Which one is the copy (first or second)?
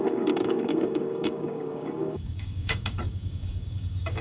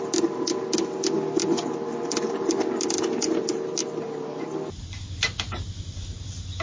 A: first